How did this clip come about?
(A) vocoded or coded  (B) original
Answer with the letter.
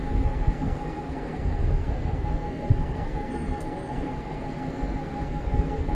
A